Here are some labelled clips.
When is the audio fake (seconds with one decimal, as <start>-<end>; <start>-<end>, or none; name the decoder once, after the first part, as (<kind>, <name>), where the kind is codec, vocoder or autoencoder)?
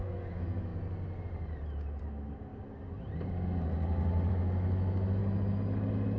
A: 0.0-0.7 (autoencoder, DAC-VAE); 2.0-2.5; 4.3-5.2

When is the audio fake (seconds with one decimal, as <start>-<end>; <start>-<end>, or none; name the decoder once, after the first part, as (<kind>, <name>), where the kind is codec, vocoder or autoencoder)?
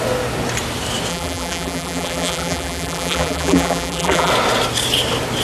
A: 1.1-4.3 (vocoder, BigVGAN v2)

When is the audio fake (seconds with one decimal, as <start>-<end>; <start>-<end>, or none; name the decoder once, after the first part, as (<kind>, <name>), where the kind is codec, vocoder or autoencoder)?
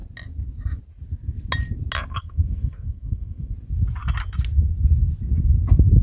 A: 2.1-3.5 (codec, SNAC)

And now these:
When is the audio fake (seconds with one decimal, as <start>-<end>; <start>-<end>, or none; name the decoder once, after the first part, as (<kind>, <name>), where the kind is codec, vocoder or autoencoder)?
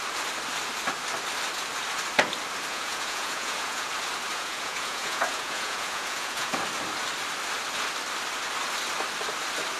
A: 2.7-3.9 (vocoder, Vocos); 4.3-6.6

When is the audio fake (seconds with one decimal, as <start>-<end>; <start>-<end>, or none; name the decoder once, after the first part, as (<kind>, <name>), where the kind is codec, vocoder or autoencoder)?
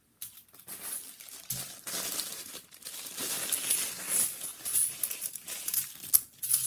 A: 2.3-3.4 (vocoder, BigVGAN v2); 4.5-5.9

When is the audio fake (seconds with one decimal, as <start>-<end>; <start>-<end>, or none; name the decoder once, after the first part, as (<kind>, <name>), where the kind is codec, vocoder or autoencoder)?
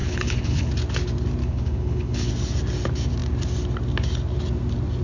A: 0.0-0.7 (codec, HILCodec); 1.4-2.3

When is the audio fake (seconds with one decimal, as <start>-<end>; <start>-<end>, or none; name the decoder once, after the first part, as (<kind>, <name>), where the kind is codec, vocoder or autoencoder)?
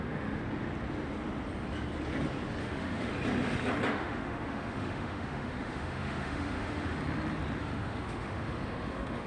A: 0.0-0.4 (autoencoder, DAC-VAE); 2.6-3.1; 3.9-7.0; 7.6-9.3